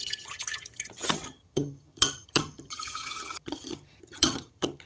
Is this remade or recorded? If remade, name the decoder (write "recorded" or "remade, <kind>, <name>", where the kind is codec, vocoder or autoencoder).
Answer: remade, vocoder, HiFi-GAN